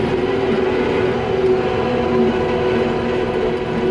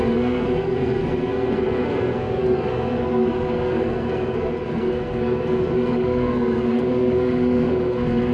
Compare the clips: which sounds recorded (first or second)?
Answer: first